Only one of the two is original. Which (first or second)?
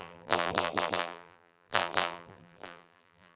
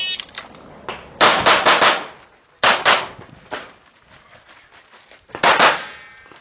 second